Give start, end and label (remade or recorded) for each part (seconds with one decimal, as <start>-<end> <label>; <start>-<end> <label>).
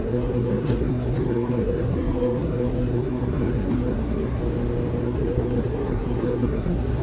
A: 0.0-4.4 remade; 4.4-5.0 recorded; 5.0-7.0 remade